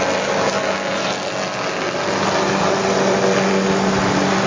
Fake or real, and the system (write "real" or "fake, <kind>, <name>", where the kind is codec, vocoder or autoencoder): real